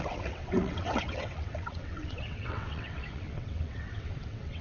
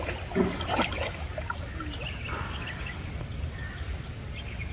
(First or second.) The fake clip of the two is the first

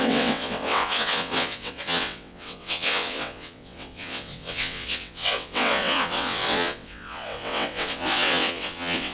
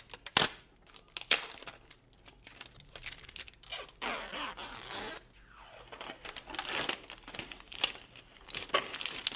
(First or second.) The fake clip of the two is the first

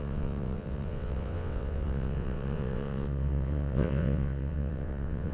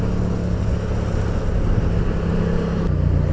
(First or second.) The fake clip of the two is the first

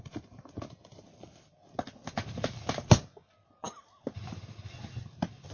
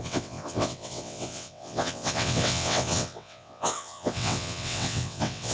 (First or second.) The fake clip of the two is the second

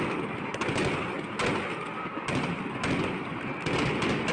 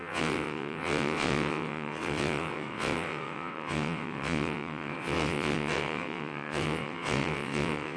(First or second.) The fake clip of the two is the second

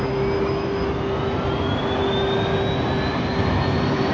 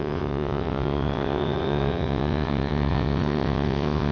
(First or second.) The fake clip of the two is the second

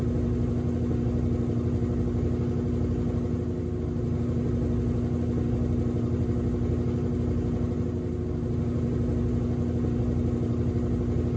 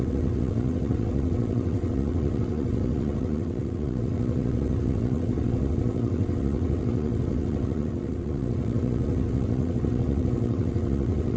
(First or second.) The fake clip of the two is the second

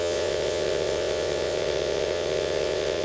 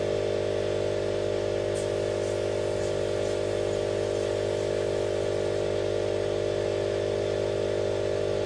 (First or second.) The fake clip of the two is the first